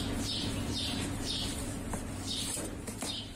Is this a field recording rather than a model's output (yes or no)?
no